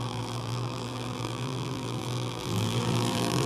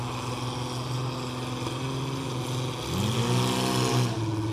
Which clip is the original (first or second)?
second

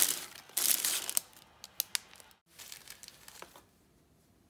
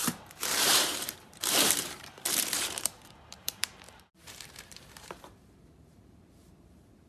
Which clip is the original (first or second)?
first